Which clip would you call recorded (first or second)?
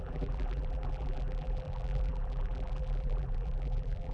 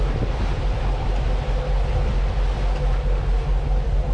second